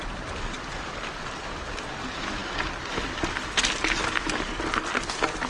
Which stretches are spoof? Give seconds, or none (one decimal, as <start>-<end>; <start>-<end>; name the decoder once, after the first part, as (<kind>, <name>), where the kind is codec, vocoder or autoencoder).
none